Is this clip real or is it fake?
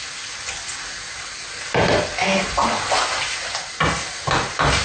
real